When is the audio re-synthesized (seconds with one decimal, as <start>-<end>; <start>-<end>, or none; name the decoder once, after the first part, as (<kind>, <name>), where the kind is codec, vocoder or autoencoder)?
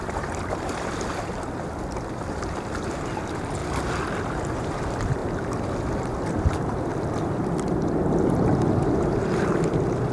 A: 0.0-3.6 (vocoder, BigVGAN v2); 4.2-5.2; 6.3-10.1